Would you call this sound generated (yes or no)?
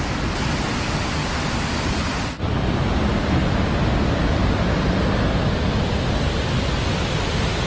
no